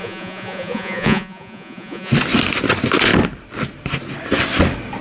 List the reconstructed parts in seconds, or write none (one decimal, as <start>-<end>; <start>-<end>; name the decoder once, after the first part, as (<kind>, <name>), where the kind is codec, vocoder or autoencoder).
0.0-2.1 (vocoder, Vocos)